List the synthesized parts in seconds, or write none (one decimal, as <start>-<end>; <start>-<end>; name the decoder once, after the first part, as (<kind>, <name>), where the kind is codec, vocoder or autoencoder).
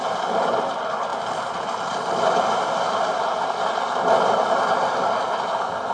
none